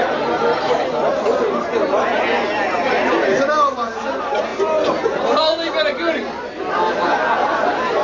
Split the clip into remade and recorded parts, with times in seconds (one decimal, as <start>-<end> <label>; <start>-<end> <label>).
0.0-8.0 recorded